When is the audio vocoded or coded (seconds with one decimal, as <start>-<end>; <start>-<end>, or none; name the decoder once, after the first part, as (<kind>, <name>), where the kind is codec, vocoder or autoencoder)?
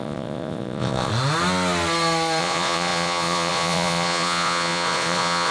0.0-1.1 (vocoder, Vocos); 2.4-5.5